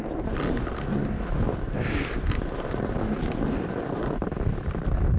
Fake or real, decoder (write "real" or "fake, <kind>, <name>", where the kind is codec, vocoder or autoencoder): real